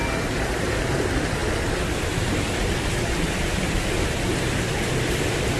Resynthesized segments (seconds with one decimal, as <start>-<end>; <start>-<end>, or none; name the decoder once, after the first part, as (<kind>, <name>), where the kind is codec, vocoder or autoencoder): none